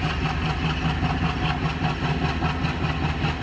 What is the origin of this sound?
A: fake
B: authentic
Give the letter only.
B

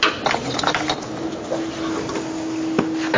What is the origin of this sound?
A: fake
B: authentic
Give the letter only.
B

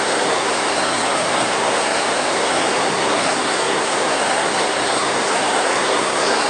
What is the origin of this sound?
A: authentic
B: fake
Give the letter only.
B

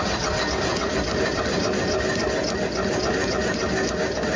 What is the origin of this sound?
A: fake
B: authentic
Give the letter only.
B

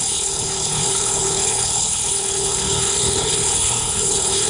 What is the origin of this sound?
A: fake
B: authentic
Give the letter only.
A